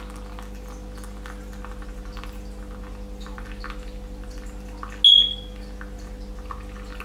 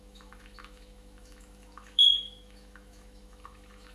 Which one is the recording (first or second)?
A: first